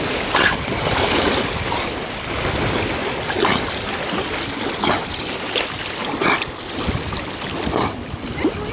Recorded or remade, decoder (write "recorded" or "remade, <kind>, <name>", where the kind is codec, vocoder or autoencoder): recorded